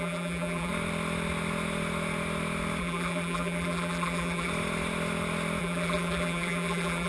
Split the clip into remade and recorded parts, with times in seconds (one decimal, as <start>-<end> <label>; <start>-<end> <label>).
0.0-0.7 remade; 0.7-2.8 recorded; 2.8-4.5 remade; 4.5-5.6 recorded; 5.6-7.1 remade